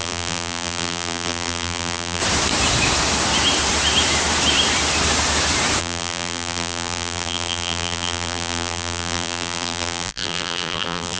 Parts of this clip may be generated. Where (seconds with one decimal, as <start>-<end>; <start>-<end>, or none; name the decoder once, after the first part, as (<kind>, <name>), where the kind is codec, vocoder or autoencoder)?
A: 0.0-2.2 (vocoder, BigVGAN v2); 5.8-11.2